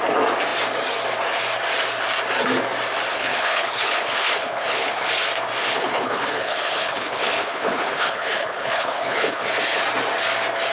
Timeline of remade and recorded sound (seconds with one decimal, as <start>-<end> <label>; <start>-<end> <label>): 0.0-3.1 recorded; 3.1-5.1 remade; 5.1-5.6 recorded; 5.6-9.5 remade; 9.5-10.7 recorded